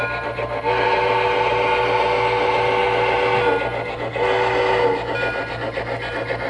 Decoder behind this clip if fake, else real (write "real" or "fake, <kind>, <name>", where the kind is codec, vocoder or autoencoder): real